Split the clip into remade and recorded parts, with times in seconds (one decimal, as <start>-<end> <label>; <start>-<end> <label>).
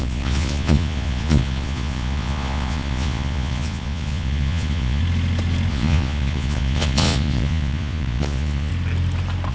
0.0-5.0 remade; 5.0-5.7 recorded; 5.7-8.7 remade; 8.7-9.5 recorded